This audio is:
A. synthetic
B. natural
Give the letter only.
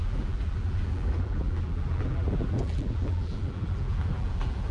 A